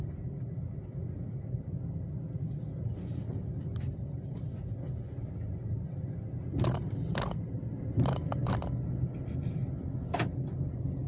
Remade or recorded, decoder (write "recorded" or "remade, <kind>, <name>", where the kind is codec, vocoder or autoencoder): recorded